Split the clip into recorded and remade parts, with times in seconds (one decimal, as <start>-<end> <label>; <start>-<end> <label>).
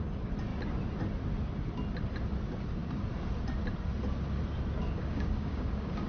0.0-4.8 recorded; 4.8-6.1 remade